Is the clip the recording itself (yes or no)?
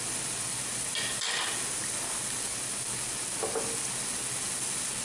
yes